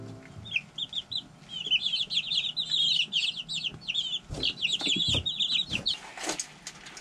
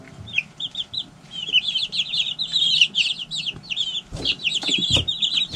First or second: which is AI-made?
second